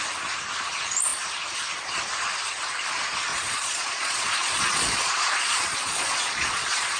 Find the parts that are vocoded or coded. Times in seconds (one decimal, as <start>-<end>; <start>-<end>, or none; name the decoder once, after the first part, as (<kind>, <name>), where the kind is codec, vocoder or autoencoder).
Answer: 3.3-7.0 (vocoder, Vocos)

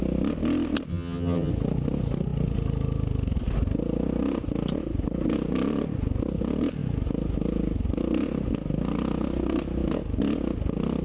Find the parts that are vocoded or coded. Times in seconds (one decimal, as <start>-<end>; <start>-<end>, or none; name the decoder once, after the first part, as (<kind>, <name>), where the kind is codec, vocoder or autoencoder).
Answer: 0.9-1.5 (vocoder, HiFi-GAN)

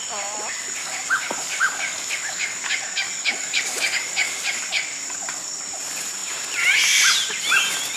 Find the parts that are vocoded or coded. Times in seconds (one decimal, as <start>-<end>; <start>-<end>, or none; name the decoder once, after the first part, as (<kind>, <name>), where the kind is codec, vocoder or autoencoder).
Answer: 0.8-5.6 (codec, DAC)

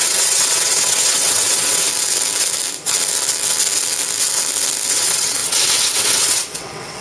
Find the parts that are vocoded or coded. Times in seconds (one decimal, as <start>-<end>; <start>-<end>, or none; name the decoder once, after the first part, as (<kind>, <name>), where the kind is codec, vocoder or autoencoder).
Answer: 0.0-1.9 (vocoder, WaveNeXt); 4.9-7.0